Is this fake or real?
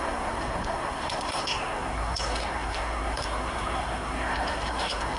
fake